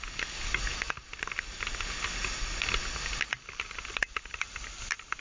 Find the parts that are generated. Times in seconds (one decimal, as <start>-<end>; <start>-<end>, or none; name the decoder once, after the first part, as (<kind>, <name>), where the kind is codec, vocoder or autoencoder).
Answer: none